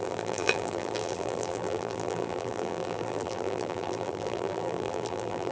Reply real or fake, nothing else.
fake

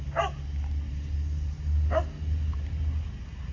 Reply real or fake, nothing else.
real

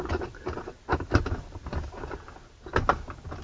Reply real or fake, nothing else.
real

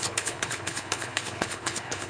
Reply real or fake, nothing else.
fake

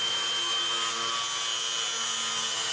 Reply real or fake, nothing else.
real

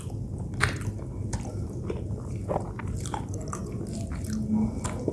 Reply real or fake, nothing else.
real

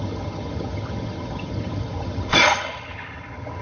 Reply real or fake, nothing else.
fake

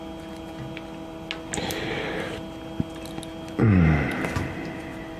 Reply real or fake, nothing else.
real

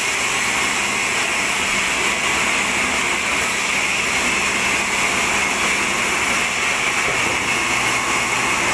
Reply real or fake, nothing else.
real